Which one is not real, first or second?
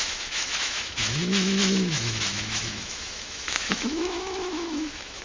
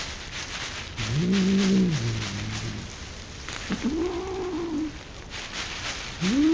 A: first